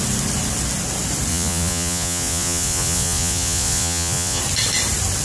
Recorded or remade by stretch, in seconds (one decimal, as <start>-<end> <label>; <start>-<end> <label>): 0.0-1.3 recorded; 1.3-4.4 remade; 4.4-5.2 recorded